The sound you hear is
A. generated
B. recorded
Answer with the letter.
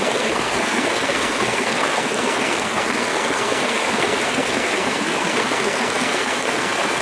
A